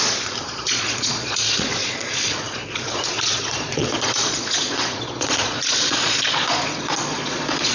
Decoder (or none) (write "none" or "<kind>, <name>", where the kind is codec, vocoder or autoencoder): vocoder, Vocos